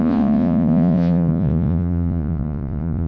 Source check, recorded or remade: remade